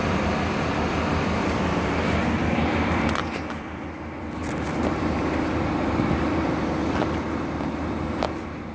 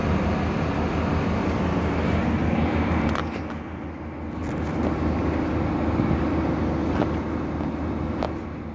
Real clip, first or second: second